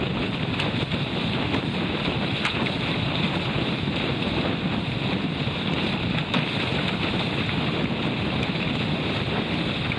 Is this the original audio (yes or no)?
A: yes